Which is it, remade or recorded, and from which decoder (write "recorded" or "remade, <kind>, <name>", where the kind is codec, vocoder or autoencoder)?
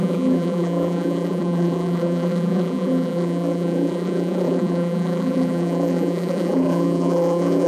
remade, vocoder, BigVGAN v2